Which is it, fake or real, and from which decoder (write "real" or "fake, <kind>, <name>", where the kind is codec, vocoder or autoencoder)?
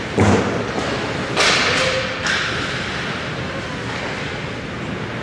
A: real